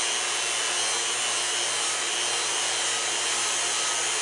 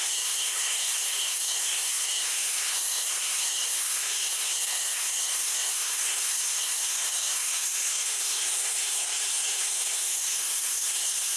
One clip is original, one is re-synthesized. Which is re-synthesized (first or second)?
second